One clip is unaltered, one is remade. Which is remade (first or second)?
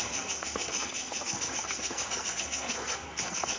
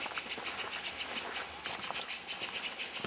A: first